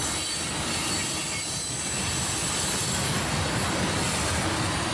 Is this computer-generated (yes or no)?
no